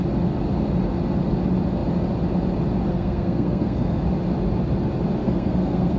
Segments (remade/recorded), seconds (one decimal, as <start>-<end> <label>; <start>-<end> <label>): 0.0-2.9 recorded; 2.9-4.0 remade; 4.0-5.2 recorded; 5.2-6.0 remade